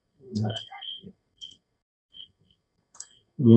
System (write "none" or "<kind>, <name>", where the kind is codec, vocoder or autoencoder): codec, SNAC